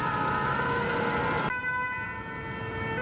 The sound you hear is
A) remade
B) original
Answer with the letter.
B